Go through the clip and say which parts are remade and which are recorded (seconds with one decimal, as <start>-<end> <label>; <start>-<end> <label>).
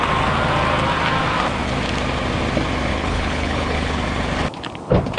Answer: 0.0-2.9 recorded; 2.9-4.0 remade; 4.0-5.2 recorded